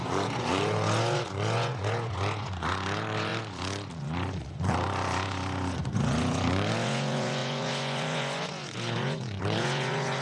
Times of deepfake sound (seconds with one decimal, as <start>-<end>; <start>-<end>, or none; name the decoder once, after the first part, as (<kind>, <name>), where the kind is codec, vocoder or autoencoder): 0.0-10.2 (vocoder, Vocos)